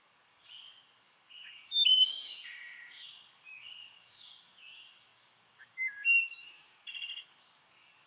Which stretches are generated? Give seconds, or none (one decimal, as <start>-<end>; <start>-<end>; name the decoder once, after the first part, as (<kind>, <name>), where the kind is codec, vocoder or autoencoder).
0.0-8.1 (codec, DAC)